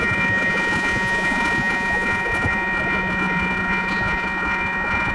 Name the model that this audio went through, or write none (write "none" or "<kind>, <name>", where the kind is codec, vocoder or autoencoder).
vocoder, Vocos